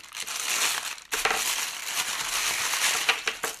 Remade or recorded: recorded